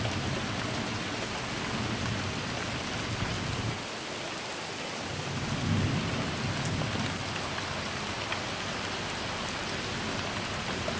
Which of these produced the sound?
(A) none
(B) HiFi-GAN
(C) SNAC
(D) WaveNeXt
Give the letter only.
A